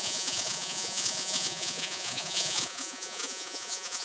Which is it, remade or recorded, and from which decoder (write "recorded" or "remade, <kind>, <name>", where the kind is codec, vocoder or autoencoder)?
remade, vocoder, Vocos